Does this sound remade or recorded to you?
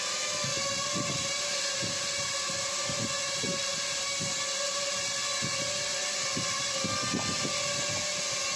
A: recorded